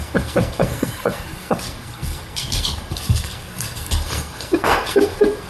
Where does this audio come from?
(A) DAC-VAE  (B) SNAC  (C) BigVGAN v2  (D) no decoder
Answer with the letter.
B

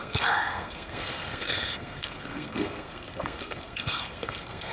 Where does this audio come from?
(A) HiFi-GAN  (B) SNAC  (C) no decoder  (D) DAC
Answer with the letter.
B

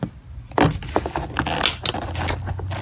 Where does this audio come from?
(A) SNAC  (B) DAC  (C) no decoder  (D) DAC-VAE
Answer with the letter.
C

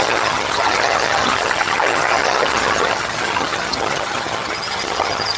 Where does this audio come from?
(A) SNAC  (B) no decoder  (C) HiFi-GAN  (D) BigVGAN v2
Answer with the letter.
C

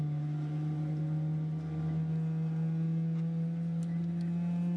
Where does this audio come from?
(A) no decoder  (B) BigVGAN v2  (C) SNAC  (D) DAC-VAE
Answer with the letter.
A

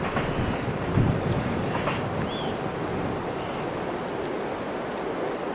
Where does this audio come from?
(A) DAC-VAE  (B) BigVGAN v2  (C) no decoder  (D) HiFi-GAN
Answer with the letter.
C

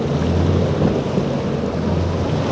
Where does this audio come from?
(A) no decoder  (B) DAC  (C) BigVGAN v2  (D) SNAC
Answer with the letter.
A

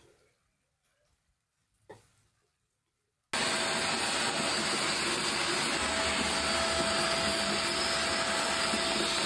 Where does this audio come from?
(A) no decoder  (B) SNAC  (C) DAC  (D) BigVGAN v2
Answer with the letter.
A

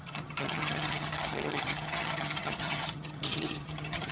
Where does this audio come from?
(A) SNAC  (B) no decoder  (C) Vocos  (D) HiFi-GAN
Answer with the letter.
D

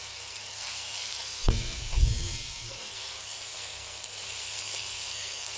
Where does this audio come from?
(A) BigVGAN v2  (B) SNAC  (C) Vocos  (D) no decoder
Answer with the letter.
B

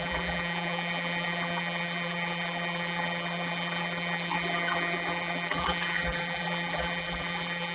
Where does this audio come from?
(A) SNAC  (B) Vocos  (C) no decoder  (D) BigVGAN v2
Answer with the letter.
D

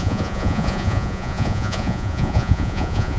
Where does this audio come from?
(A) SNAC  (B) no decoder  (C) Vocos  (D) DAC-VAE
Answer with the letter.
C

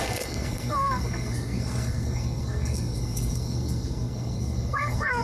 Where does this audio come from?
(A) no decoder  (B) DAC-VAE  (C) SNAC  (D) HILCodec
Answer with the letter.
C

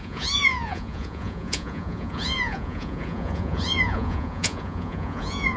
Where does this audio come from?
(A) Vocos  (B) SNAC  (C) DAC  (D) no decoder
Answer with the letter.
A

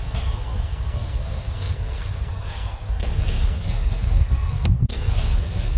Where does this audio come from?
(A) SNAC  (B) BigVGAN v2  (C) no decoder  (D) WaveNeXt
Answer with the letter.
A